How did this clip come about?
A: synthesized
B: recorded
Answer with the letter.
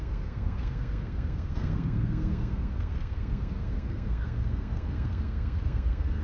A